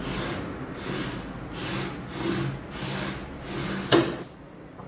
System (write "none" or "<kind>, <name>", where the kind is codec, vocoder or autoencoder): none